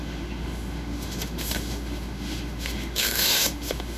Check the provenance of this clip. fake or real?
fake